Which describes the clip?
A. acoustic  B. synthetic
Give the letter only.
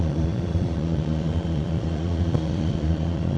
B